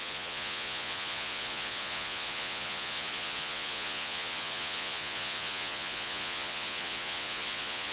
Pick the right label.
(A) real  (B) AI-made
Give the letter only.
B